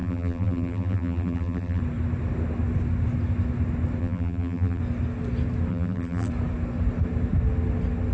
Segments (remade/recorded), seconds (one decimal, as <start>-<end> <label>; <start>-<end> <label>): 0.0-1.8 remade; 1.8-4.0 recorded; 4.0-4.8 remade; 4.8-5.7 recorded; 5.7-6.3 remade; 6.3-8.1 recorded